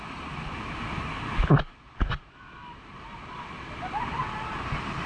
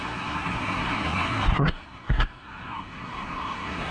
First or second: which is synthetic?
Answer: second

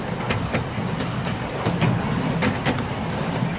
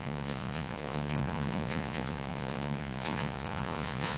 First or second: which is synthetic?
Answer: second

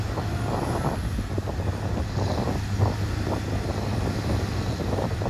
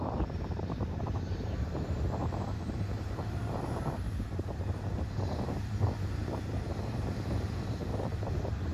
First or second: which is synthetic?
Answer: second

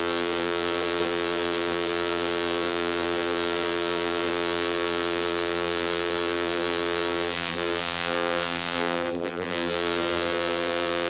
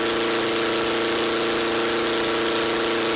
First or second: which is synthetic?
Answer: first